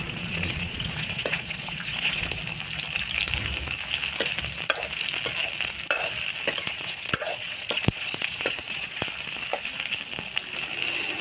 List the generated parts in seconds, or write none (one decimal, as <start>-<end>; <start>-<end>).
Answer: 0.0-2.4; 6.6-9.0